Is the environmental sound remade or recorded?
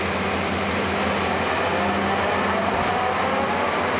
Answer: recorded